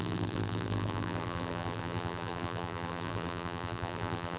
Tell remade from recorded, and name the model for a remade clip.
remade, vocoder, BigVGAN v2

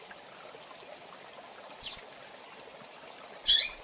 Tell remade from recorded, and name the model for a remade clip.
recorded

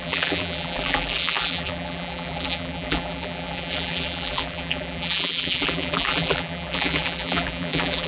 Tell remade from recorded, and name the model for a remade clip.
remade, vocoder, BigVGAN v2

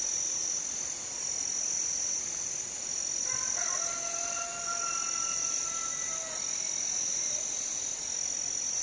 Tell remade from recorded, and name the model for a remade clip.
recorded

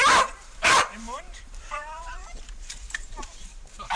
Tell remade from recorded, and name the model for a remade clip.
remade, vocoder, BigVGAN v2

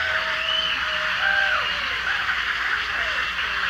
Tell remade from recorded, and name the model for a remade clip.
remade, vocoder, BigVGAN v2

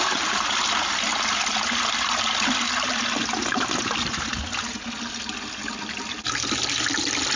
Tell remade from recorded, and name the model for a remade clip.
recorded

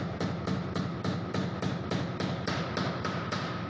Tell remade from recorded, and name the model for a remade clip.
recorded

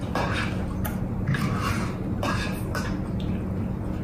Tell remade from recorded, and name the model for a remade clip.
recorded